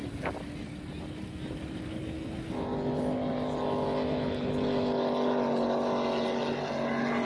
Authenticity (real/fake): real